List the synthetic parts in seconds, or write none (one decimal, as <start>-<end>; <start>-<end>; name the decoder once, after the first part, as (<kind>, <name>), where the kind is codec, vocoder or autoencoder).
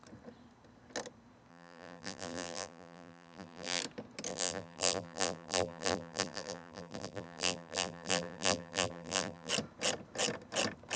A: 1.5-3.8 (vocoder, BigVGAN v2); 4.3-9.5